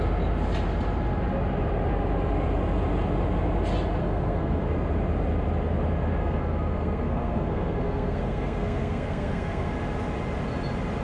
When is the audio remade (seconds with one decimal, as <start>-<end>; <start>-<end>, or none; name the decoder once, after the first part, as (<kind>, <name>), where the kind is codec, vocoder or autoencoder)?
4.0-4.6 (codec, SNAC); 6.2-9.7